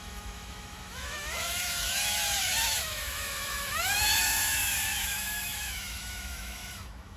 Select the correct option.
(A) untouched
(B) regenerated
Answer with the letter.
B